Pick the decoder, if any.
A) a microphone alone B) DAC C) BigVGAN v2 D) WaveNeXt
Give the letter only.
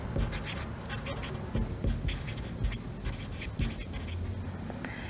A